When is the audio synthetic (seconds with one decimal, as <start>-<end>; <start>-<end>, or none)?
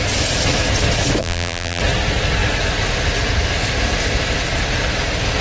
1.2-1.8